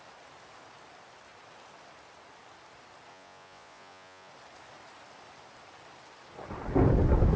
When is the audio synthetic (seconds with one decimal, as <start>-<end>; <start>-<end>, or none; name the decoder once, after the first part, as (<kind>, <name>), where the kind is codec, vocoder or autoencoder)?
3.1-4.3 (vocoder, Vocos)